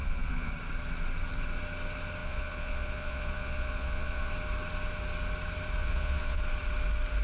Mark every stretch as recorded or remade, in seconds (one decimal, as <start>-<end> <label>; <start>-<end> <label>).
0.0-0.5 remade; 0.5-2.2 recorded; 2.2-4.3 remade; 4.3-5.8 recorded; 5.8-6.4 remade; 6.4-7.2 recorded

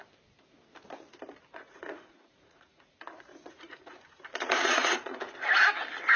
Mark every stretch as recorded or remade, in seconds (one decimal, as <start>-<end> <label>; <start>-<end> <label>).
0.0-1.5 recorded; 1.5-5.2 remade; 5.2-6.2 recorded

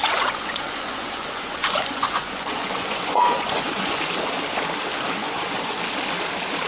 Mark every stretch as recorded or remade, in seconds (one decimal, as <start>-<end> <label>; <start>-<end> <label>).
0.0-4.0 remade; 4.0-5.2 recorded; 5.2-5.8 remade; 5.8-6.7 recorded

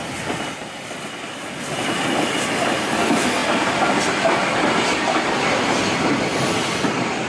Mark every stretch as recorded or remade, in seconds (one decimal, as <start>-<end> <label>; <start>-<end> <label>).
0.0-7.3 recorded

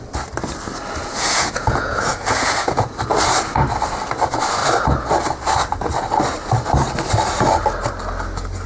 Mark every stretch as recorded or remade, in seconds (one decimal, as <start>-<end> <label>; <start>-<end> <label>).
0.0-1.0 recorded; 1.0-3.0 remade; 3.0-8.7 recorded

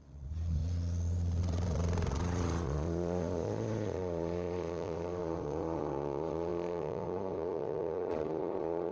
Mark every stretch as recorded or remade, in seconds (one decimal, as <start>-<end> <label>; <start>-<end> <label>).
0.0-8.9 remade

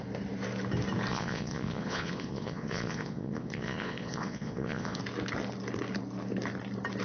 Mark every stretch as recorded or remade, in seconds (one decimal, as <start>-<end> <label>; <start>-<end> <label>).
0.0-1.1 recorded; 1.1-5.0 remade; 5.0-7.0 recorded